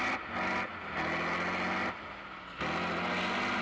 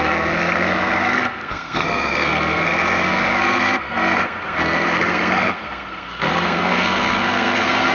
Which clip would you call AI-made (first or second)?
second